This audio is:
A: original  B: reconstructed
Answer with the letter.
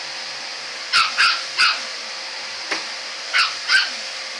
A